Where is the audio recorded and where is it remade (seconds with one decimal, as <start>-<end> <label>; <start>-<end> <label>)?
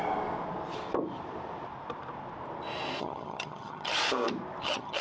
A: 0.0-3.0 recorded; 3.0-3.9 remade; 3.9-4.6 recorded; 4.6-5.0 remade